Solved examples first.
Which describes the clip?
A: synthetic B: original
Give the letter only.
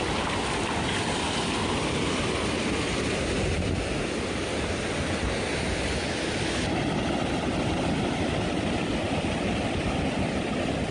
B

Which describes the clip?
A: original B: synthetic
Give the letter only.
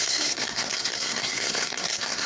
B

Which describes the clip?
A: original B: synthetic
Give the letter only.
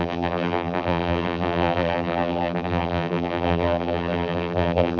B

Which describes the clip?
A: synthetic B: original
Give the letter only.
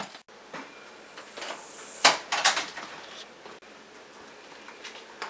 B